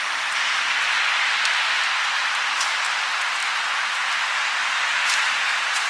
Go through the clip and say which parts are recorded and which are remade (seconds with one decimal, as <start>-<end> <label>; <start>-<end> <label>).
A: 0.0-5.9 recorded